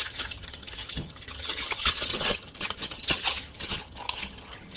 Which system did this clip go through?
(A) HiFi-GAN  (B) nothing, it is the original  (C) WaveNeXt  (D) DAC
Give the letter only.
A